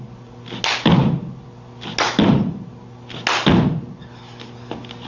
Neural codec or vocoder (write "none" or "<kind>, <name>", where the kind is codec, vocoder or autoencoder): none